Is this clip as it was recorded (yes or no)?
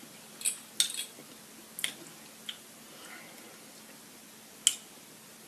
yes